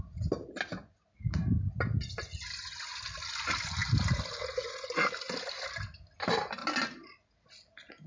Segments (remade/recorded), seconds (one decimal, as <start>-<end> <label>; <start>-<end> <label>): 0.0-8.1 recorded